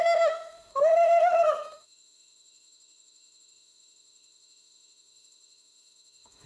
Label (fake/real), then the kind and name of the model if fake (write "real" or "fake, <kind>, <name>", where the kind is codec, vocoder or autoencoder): fake, autoencoder, DAC-VAE